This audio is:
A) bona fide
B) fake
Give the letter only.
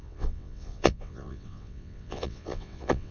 B